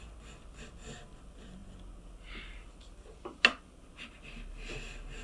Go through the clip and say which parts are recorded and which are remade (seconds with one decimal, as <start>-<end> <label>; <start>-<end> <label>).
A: 0.0-5.2 recorded